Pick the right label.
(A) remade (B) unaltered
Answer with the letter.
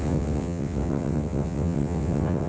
A